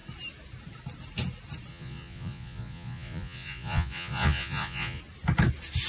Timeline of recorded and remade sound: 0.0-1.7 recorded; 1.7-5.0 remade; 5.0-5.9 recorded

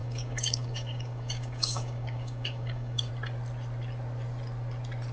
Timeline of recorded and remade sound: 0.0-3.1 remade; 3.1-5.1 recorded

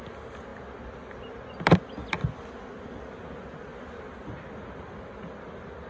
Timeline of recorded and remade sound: 0.0-5.9 recorded